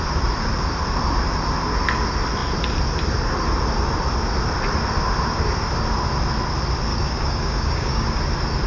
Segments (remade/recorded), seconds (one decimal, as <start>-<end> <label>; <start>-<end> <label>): 0.0-6.9 recorded; 6.9-8.2 remade; 8.2-8.7 recorded